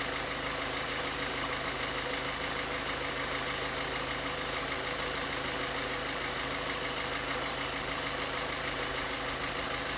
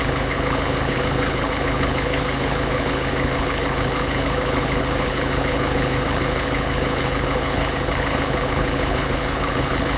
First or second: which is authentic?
first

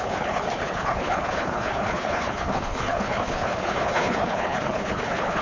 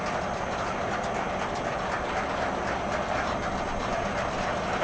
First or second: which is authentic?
second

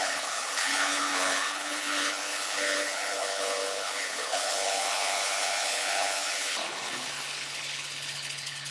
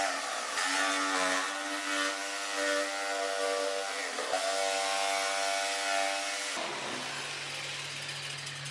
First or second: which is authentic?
second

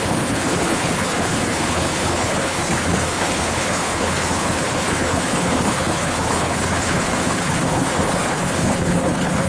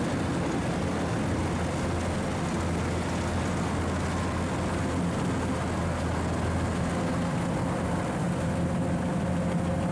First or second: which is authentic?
second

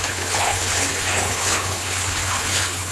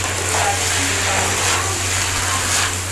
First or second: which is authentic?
second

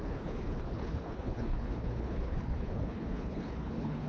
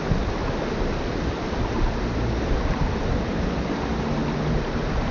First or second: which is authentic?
second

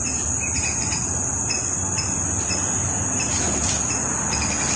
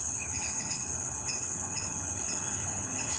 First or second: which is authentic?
first